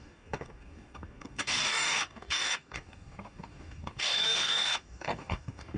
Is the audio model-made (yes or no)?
yes